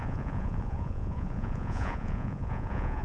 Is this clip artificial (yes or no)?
yes